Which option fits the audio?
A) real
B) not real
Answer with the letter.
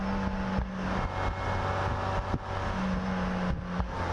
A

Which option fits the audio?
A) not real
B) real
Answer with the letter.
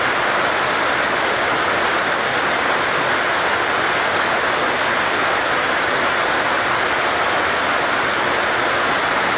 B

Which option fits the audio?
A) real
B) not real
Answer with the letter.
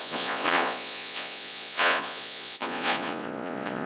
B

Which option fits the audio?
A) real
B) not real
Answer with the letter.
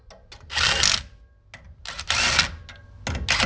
A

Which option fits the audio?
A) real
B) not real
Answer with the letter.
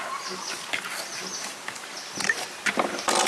A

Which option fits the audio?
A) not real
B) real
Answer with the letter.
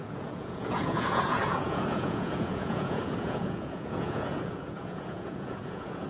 A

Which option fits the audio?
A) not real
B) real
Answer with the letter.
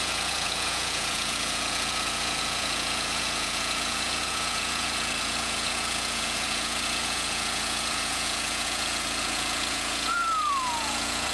A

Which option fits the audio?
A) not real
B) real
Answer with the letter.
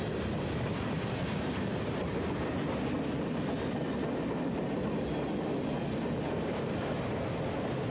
B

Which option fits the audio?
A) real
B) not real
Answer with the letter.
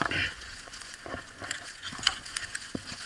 B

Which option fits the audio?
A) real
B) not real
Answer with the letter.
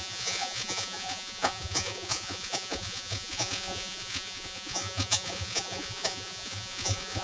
B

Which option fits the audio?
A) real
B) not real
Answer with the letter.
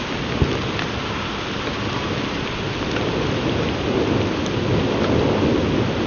A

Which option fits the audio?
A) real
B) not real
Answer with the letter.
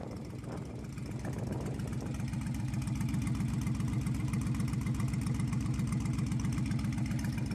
A